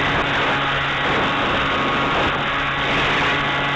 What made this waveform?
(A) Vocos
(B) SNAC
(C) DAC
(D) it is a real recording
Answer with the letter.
D